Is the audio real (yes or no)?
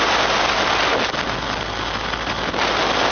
yes